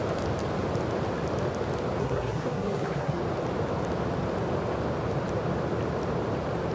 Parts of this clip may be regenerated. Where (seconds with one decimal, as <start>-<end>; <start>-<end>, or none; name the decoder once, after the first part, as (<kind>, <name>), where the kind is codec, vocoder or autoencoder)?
2.0-3.2 (codec, SNAC)